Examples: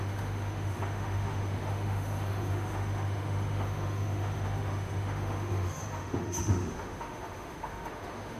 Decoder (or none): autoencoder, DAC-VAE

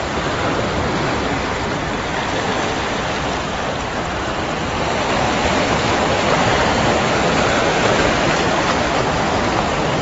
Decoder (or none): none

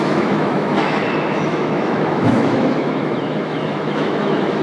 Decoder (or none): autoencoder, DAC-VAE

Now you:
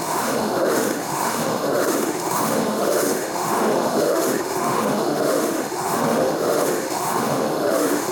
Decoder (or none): autoencoder, DAC-VAE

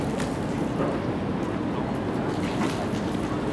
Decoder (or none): none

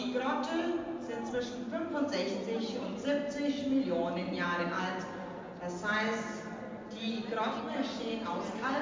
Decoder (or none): none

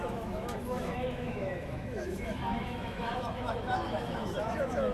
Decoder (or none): autoencoder, DAC-VAE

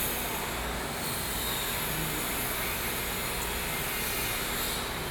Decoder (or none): none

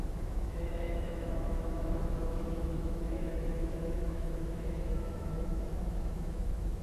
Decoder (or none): autoencoder, DAC-VAE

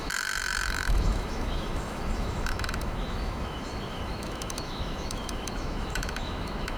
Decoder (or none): autoencoder, DAC-VAE